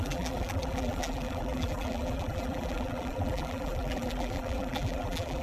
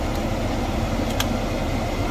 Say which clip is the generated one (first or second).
first